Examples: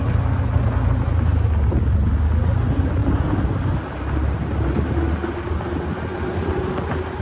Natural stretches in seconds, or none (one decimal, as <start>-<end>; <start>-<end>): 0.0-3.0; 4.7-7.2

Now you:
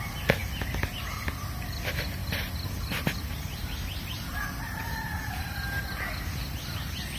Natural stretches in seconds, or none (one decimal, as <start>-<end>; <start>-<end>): 0.0-2.2; 6.0-7.2

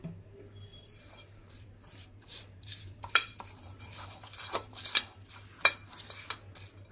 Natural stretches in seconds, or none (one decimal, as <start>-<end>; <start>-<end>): 0.0-0.7; 4.8-6.9